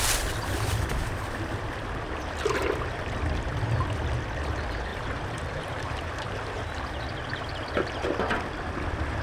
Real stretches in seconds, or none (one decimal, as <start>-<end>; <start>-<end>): 0.0-4.9; 6.8-9.2